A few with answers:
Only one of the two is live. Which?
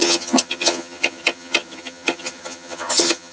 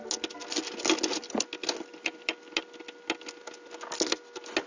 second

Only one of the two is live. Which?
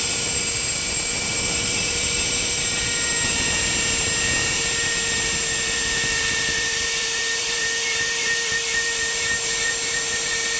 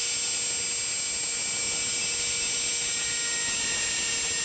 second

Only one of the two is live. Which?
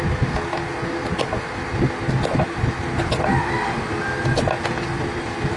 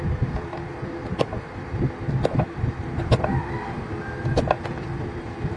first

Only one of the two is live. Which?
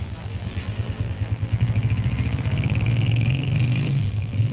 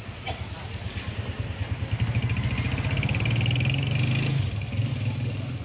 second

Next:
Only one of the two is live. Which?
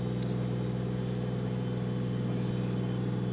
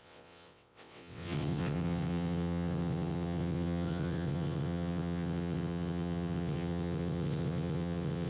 first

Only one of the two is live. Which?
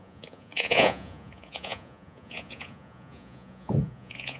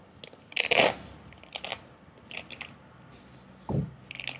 second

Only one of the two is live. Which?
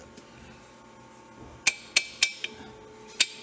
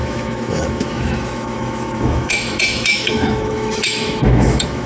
first